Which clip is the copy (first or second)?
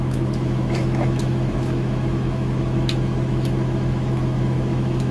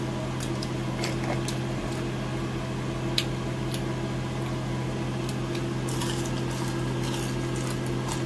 first